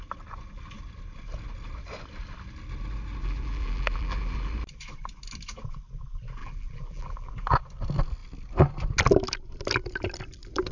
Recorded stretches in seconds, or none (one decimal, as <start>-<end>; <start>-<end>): 0.0-3.2; 4.5-6.4; 7.3-10.7